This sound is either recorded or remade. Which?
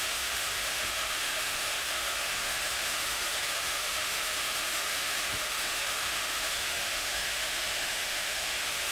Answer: remade